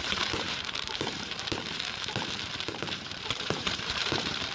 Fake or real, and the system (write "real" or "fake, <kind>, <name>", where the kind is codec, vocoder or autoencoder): fake, vocoder, BigVGAN v2